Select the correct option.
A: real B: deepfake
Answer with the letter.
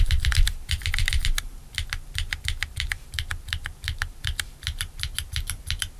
B